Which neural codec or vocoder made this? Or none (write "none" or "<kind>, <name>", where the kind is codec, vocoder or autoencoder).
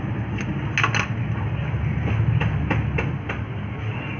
none